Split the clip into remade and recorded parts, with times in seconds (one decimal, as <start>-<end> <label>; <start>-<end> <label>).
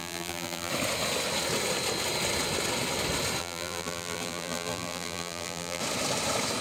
0.0-0.7 remade; 0.7-3.4 recorded; 3.4-5.8 remade; 5.8-6.6 recorded